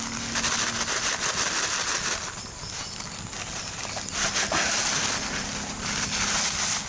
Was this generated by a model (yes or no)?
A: no